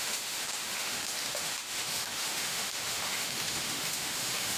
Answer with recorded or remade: remade